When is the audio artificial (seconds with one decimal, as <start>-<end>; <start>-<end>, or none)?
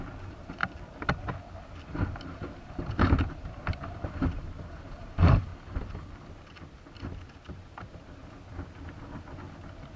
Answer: 0.0-0.6; 1.7-5.5; 7.5-8.2